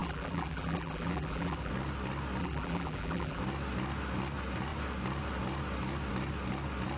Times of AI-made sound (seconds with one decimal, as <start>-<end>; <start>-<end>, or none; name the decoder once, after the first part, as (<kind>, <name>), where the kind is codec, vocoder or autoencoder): 0.0-1.7 (vocoder, BigVGAN v2); 2.4-3.4